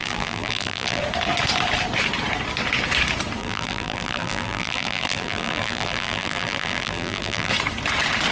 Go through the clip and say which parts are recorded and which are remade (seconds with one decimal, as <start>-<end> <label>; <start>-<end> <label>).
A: 0.0-1.0 remade; 1.0-3.4 recorded; 3.4-7.5 remade; 7.5-8.3 recorded